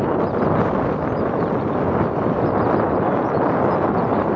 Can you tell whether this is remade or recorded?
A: recorded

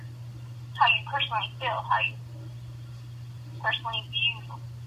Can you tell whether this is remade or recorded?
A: recorded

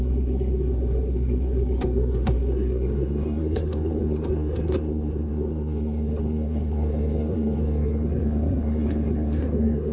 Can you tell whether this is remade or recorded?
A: remade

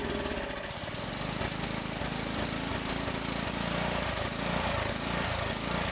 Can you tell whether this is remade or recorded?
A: recorded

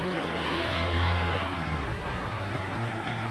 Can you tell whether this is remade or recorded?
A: remade